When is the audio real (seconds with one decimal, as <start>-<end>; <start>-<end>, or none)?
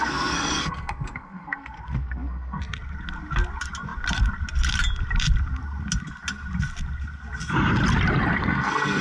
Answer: 2.6-8.4